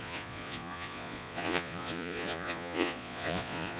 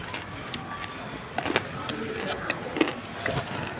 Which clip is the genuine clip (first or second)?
second